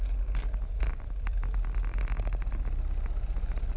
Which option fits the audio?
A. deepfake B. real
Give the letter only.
B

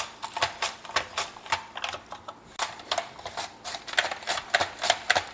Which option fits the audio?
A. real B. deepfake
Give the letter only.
A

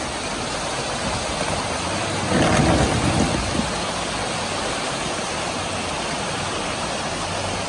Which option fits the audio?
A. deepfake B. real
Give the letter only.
B